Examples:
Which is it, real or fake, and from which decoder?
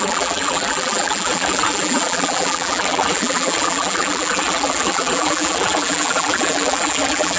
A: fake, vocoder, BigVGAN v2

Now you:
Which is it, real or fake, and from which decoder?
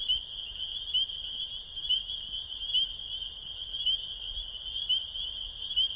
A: real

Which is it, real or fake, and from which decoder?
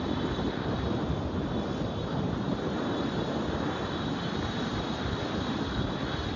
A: real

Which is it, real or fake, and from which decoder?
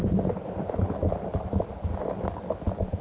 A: real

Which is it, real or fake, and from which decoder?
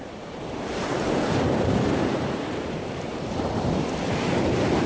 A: fake, vocoder, BigVGAN v2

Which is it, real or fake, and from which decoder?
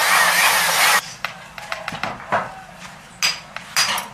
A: real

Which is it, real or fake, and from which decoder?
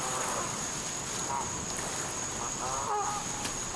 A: real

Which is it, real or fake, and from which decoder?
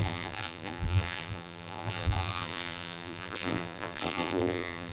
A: fake, vocoder, BigVGAN v2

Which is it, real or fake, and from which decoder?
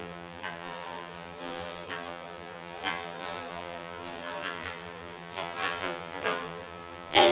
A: fake, vocoder, BigVGAN v2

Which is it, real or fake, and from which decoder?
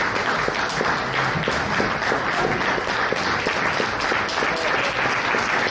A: real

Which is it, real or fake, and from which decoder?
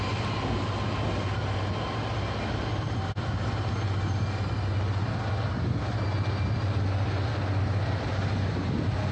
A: real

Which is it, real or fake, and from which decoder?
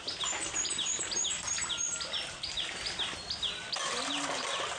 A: fake, vocoder, BigVGAN v2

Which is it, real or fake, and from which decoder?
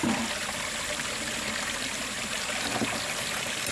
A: real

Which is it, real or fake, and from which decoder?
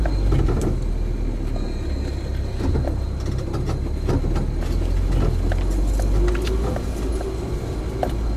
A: real